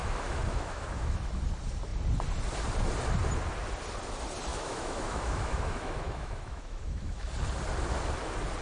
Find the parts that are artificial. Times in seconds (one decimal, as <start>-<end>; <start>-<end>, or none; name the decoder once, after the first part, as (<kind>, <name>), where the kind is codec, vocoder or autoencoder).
0.0-1.4 (autoencoder, DAC-VAE); 4.5-7.3

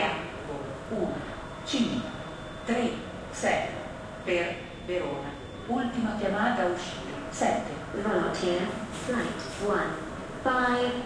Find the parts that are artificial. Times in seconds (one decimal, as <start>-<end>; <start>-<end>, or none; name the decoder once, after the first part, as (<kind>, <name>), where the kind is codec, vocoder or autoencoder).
none